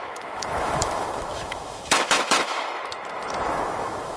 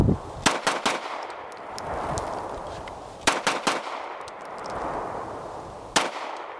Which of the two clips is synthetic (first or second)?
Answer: first